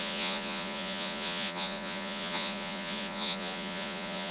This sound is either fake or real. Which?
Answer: fake